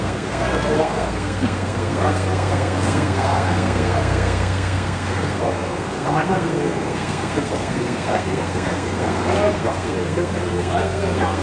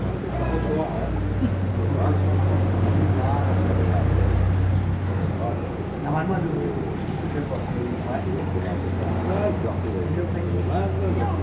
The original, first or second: second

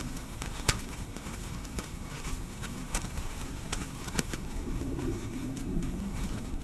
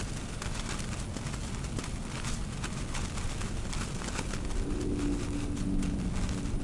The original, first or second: second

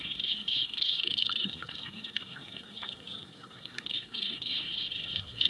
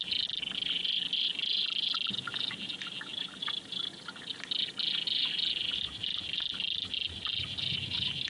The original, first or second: second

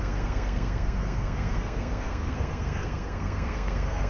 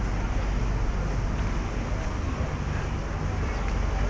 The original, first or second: second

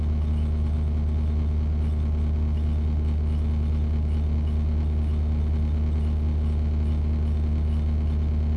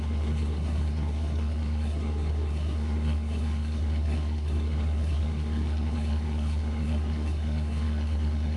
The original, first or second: first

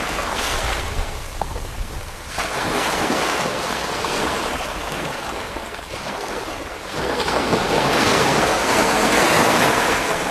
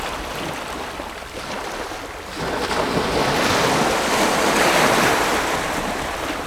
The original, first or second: second